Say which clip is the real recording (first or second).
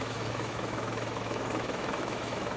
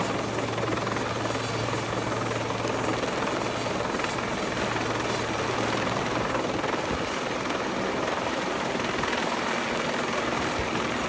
second